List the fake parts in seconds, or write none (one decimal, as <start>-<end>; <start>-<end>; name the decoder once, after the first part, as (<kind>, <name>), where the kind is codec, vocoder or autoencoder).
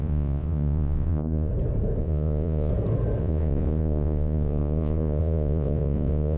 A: 0.0-1.5 (vocoder, Vocos); 2.0-2.7; 3.2-6.4